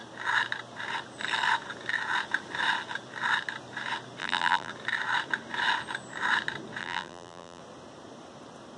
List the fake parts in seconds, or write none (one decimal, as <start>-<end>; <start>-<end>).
4.2-4.7; 6.8-7.6

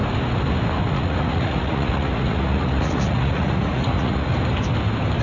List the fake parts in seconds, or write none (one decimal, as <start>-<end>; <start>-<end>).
0.9-4.3

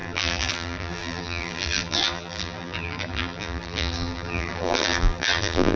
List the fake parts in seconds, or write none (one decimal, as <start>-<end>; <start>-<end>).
0.0-5.8

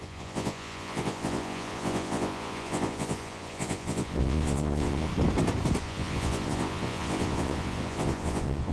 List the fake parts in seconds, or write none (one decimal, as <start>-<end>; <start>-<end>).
0.0-5.1; 5.8-8.7

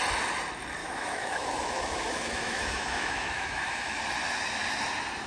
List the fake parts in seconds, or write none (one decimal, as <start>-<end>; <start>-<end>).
0.8-4.0

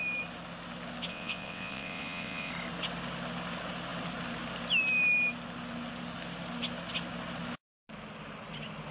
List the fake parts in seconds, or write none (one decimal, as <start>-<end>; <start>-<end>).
1.1-2.5

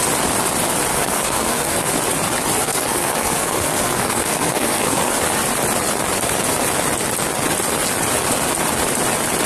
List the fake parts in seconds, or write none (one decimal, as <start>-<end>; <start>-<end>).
0.9-1.9; 2.6-5.2